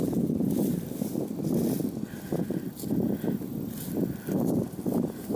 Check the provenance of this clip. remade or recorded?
recorded